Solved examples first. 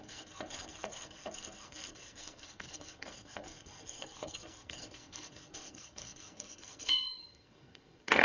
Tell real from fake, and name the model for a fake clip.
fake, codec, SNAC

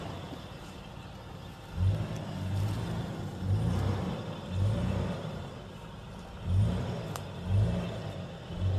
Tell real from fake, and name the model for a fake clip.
real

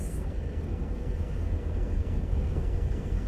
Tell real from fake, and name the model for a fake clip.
fake, codec, SNAC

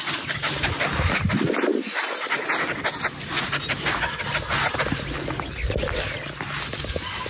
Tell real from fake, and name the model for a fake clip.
real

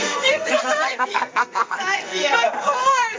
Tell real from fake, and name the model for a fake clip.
fake, codec, SNAC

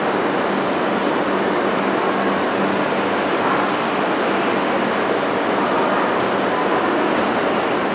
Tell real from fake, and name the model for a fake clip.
real